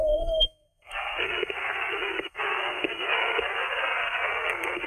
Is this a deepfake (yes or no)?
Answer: yes